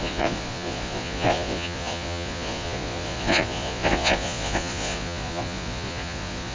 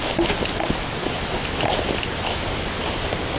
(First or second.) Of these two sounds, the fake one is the first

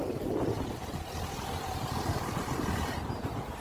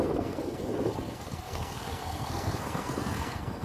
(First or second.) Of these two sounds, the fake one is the second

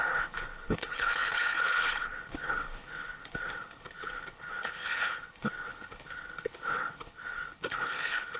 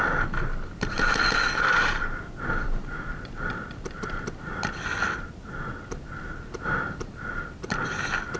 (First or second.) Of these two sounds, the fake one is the first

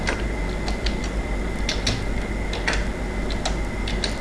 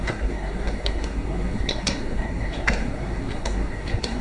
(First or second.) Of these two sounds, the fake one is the second